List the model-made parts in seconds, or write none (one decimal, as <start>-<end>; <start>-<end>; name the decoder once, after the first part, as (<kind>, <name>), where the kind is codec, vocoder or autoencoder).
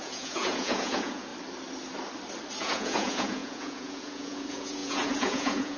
0.0-1.3 (vocoder, Vocos); 2.6-5.8